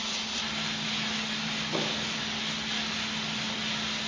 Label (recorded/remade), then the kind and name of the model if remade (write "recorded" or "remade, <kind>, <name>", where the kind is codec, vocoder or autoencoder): recorded